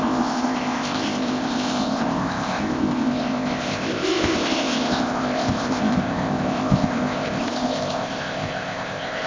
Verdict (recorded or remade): remade